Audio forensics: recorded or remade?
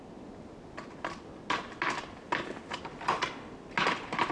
recorded